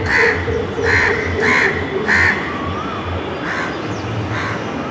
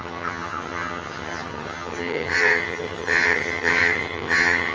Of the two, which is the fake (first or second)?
second